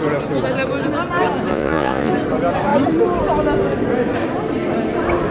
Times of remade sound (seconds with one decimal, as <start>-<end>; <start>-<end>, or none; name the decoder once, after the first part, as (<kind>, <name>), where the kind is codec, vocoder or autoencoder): 1.5-2.1 (vocoder, Vocos)